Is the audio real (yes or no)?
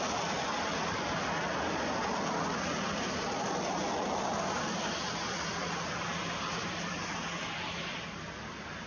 yes